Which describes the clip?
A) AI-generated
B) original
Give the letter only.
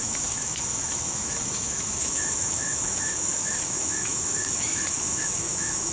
A